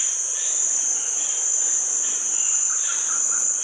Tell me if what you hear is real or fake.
real